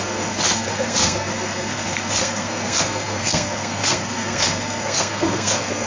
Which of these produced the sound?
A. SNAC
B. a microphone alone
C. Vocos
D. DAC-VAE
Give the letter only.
A